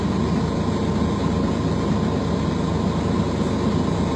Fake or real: real